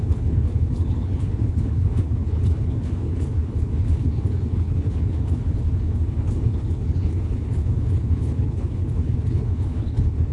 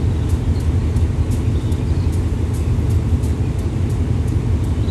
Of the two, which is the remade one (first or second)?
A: first